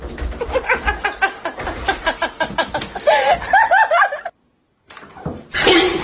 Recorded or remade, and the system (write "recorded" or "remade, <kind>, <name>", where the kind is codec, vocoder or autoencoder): recorded